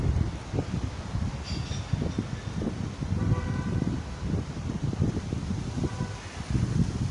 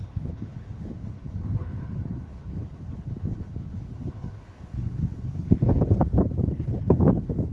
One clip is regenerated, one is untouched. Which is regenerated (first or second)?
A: second